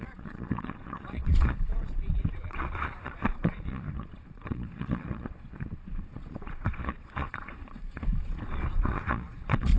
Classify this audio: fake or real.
fake